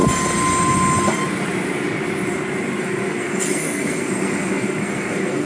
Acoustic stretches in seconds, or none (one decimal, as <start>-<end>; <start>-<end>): 0.0-2.8